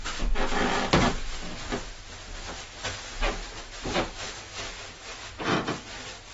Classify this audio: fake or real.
real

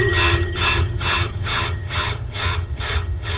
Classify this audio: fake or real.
fake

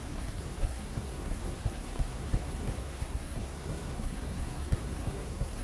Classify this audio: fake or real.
fake